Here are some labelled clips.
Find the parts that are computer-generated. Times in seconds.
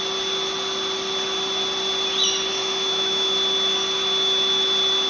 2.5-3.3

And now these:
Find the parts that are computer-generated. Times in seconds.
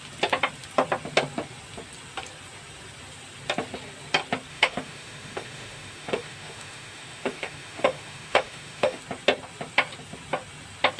4.5-9.0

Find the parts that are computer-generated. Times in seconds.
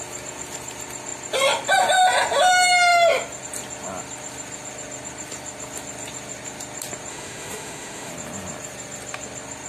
7.1-8.1